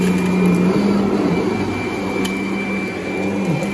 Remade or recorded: recorded